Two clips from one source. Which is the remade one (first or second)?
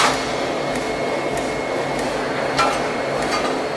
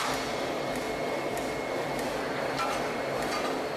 second